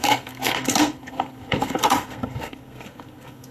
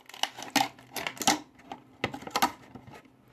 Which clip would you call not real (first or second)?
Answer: first